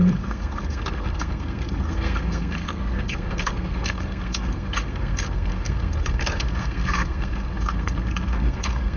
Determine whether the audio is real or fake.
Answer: fake